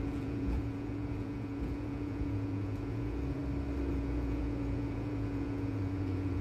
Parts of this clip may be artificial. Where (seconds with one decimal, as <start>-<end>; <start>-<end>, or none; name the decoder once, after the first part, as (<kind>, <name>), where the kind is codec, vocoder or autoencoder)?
0.0-3.4 (vocoder, Vocos); 3.9-6.4